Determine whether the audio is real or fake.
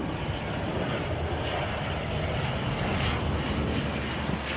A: real